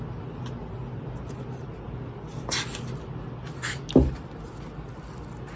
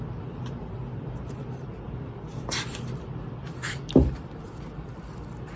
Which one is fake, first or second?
second